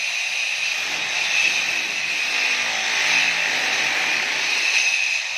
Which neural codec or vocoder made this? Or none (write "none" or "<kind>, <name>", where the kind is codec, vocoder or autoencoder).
none